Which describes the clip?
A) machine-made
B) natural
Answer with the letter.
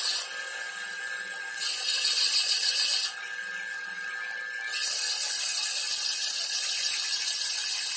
B